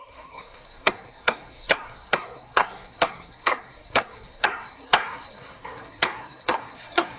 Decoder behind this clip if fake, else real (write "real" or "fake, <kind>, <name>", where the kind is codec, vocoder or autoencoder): fake, codec, SNAC